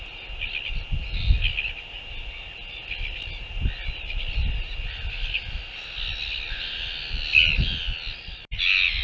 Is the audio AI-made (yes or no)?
no